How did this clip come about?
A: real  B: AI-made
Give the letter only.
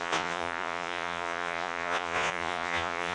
B